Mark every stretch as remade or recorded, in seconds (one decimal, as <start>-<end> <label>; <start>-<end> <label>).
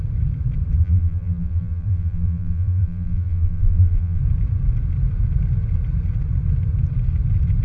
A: 0.0-0.8 recorded; 0.8-4.2 remade; 4.2-7.6 recorded